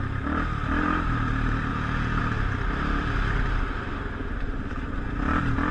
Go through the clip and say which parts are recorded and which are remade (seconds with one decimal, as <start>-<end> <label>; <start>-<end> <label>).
0.0-1.7 recorded; 1.7-2.2 remade; 2.2-5.7 recorded